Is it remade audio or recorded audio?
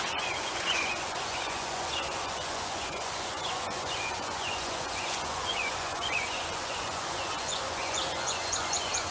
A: remade